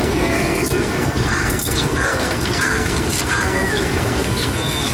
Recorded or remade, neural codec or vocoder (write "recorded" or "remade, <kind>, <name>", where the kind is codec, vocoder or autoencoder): remade, codec, SNAC